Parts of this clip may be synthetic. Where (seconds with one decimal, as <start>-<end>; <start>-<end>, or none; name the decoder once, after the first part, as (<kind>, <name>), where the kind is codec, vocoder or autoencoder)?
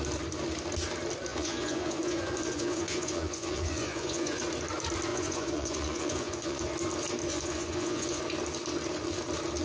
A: 1.3-4.4 (vocoder, Vocos); 5.1-6.7; 7.3-8.2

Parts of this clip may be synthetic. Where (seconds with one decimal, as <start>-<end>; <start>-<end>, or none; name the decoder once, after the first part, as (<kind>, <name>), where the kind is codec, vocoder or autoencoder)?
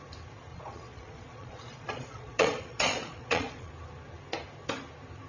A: 0.5-3.7 (vocoder, Vocos)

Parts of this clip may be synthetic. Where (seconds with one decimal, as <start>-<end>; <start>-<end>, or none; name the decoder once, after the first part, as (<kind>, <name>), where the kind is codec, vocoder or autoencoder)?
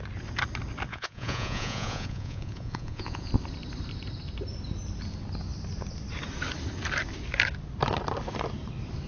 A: 0.9-3.3 (vocoder, Vocos)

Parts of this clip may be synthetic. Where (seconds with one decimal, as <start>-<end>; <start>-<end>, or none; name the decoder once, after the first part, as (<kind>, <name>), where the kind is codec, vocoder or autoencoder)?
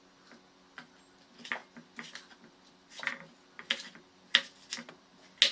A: none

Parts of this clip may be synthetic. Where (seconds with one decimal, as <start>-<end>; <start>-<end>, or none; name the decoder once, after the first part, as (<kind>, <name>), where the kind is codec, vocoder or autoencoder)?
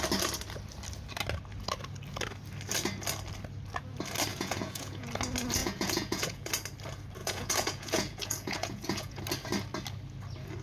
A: 4.3-5.1 (vocoder, Vocos); 5.6-6.5; 7.2-9.2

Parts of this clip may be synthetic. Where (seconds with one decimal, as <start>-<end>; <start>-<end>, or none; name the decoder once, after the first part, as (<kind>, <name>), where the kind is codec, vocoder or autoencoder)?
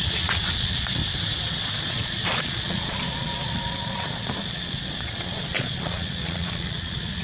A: 0.0-1.0 (vocoder, Vocos); 1.9-7.2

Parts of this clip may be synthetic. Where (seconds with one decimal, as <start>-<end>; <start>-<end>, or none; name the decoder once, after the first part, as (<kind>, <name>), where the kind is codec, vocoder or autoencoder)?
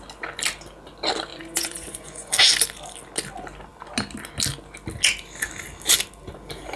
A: 1.3-2.3 (vocoder, Vocos)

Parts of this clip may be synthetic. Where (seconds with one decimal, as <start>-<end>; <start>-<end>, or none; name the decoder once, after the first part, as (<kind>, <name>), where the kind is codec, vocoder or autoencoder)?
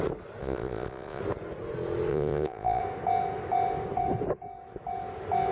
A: 0.4-1.2 (vocoder, Vocos); 2.1-2.8